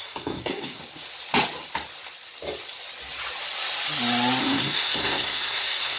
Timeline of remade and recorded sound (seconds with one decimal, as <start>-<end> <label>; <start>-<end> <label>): 0.0-0.8 remade; 0.8-4.4 recorded; 4.4-6.0 remade

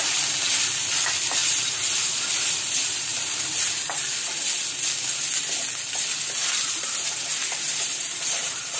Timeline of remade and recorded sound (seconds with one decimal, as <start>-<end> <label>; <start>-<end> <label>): 0.0-1.4 recorded; 1.4-2.2 remade; 2.2-3.1 recorded; 3.1-4.6 remade; 4.6-6.4 recorded; 6.4-8.8 remade

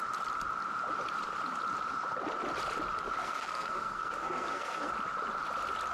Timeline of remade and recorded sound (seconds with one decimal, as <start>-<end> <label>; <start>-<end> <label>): 0.0-3.2 recorded; 3.2-4.9 remade; 4.9-5.9 recorded

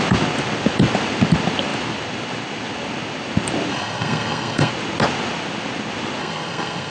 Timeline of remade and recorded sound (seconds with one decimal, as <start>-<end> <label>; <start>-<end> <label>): 0.0-3.7 recorded; 3.7-4.7 remade; 4.7-6.2 recorded; 6.2-6.9 remade